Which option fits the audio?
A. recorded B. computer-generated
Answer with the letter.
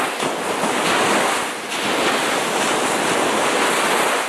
A